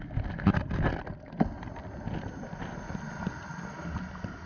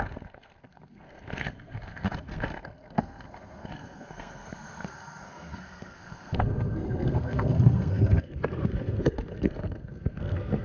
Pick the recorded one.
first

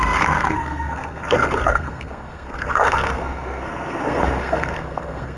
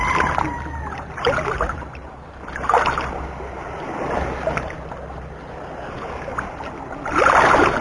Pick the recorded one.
second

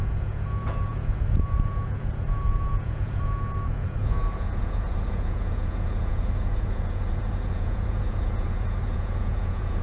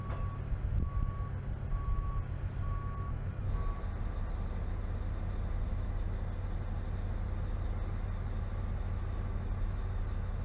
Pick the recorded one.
second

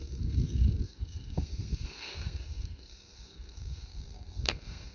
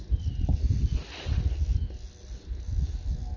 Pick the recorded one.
second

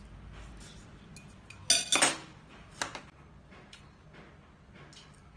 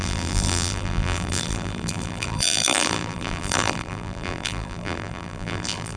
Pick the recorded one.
first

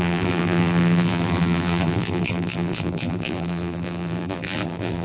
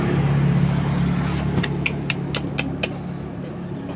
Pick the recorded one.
second